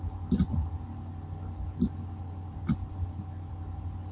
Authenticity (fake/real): real